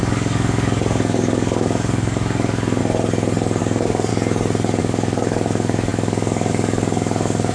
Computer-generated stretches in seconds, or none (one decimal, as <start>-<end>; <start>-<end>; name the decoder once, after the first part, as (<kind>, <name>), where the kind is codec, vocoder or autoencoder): 0.0-2.8 (codec, DAC); 3.6-4.1; 4.8-7.5